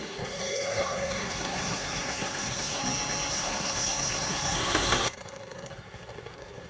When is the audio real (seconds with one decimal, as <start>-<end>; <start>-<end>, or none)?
2.8-3.3